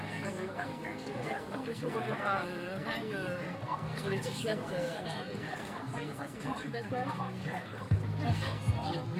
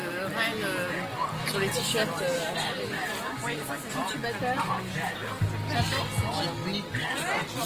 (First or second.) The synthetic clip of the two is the first